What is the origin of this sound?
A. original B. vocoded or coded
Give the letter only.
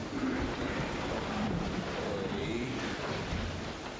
B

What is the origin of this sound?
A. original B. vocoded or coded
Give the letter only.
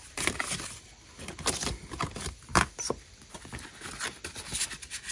A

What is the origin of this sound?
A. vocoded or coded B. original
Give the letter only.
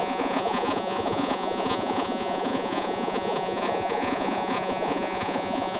A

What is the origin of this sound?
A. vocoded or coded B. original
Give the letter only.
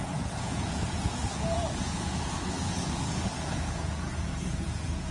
A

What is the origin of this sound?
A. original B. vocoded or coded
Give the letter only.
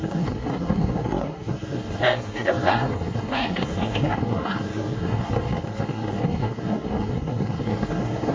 B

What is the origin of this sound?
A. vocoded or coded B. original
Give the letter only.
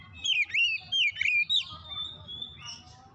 B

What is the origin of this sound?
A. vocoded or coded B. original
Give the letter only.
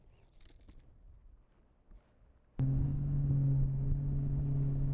B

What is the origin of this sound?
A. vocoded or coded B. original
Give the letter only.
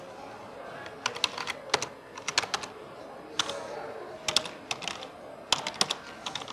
B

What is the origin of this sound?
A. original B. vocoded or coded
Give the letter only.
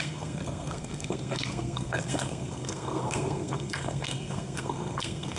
B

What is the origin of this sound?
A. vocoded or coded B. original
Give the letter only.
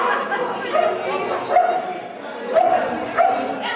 B